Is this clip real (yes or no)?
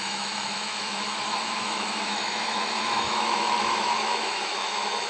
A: no